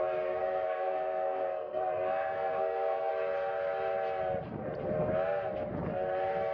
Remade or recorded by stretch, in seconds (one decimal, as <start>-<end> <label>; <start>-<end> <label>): 0.0-0.4 recorded; 0.4-3.1 remade; 3.1-6.5 recorded

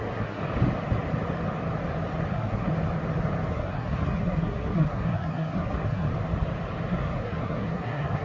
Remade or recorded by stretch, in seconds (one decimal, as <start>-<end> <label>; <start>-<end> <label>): 0.0-0.4 remade; 0.4-2.3 recorded; 2.3-2.7 remade; 2.7-3.5 recorded; 3.5-6.1 remade; 6.1-6.9 recorded; 6.9-8.2 remade

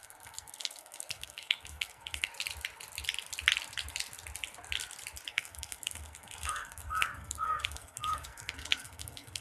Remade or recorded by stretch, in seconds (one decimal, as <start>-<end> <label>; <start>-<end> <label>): 0.0-2.3 remade; 2.3-5.3 recorded; 5.3-9.4 remade

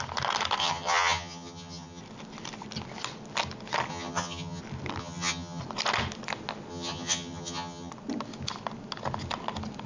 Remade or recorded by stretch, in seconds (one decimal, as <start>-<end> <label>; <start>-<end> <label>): 0.0-0.6 recorded; 0.6-2.0 remade; 2.0-3.9 recorded; 3.9-4.6 remade; 4.6-5.0 recorded; 5.0-5.6 remade; 5.6-6.7 recorded; 6.7-7.9 remade; 7.9-9.9 recorded

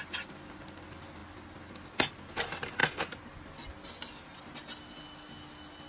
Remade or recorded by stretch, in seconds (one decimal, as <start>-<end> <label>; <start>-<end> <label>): 0.0-5.9 recorded

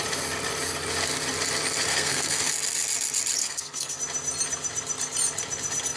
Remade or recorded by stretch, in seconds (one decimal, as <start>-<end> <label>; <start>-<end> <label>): 0.0-1.9 recorded; 1.9-2.5 remade; 2.5-3.4 recorded; 3.4-4.0 remade; 4.0-6.0 recorded

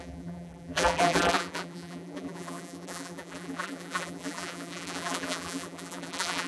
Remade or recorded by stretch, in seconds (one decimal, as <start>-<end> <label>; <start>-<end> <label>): 0.0-6.5 remade